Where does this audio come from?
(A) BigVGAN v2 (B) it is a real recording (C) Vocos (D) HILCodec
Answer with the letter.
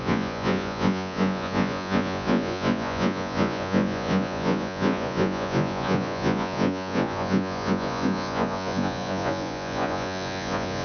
C